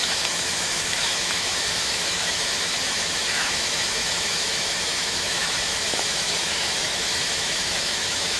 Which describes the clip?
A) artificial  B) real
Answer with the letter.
A